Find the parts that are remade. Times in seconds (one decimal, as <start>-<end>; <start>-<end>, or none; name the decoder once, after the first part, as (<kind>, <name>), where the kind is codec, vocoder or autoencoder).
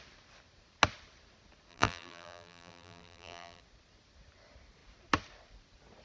1.7-3.6 (vocoder, BigVGAN v2)